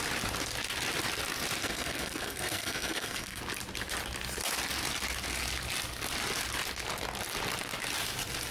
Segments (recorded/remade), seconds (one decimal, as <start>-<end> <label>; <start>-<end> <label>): 0.0-1.6 recorded; 1.6-3.4 remade; 3.4-8.5 recorded